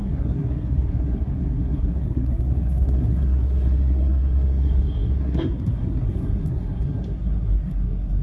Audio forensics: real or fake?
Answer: fake